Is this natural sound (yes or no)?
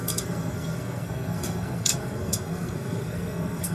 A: no